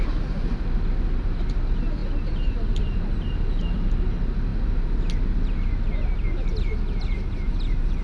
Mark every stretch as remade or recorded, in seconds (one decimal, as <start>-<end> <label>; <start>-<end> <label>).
0.0-8.0 recorded